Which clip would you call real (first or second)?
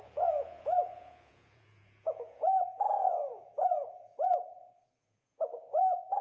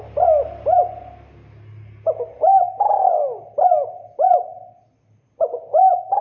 second